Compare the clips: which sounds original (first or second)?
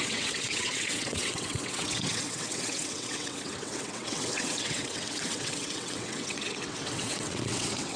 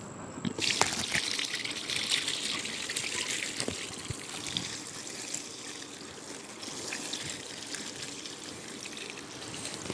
second